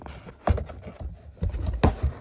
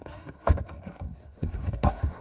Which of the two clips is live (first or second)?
first